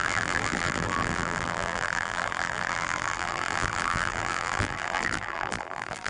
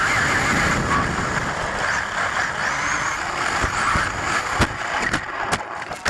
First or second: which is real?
second